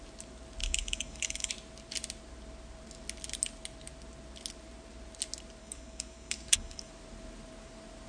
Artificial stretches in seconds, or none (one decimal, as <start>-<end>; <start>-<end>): 0.6-1.5; 5.6-6.9